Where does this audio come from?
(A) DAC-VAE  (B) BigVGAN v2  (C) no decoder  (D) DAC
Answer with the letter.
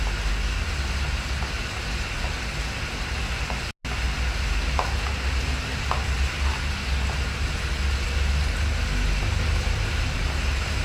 C